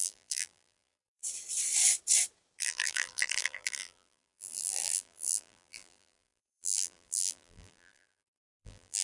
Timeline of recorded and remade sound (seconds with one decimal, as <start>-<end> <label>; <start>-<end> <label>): 0.0-1.2 remade; 1.2-2.6 recorded; 2.6-9.0 remade